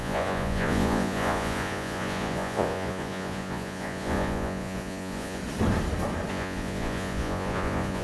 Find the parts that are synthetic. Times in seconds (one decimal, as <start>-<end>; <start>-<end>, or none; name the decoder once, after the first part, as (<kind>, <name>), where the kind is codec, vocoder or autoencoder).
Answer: 0.0-5.4 (vocoder, Vocos); 6.3-8.0